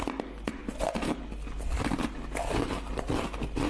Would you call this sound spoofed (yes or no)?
no